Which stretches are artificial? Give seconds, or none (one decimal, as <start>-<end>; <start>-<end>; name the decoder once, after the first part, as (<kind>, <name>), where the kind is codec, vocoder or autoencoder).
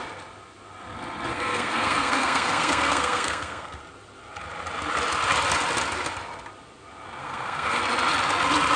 1.3-3.8 (codec, SNAC); 7.2-7.8